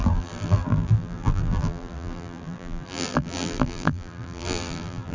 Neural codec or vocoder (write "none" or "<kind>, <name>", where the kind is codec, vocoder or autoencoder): vocoder, BigVGAN v2